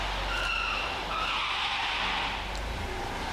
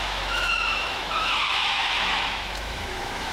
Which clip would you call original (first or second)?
first